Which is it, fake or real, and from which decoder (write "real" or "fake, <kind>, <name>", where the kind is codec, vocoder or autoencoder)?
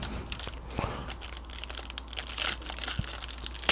real